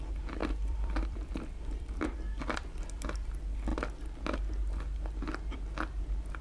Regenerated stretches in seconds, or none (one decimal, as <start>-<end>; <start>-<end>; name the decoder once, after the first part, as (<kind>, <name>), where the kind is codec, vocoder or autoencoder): 0.4-2.8 (vocoder, BigVGAN v2)